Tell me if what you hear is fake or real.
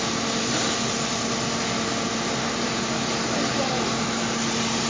real